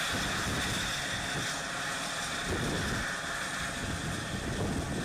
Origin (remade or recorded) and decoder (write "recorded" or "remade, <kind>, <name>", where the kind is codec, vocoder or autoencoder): recorded